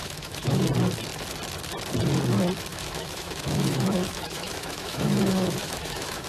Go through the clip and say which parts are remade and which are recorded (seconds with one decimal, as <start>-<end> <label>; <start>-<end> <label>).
0.0-0.6 remade; 0.6-2.7 recorded; 2.7-6.3 remade